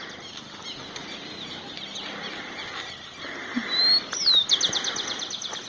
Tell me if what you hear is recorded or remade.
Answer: recorded